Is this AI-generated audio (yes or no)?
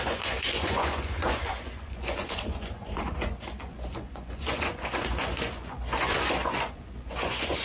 yes